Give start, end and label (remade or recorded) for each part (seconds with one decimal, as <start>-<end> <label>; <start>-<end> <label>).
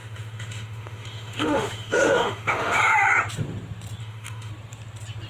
0.0-2.8 remade; 2.8-4.0 recorded; 4.0-4.5 remade; 4.5-5.3 recorded